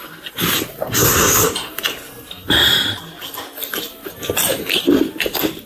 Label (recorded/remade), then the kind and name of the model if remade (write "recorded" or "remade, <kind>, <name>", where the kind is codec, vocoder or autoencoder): recorded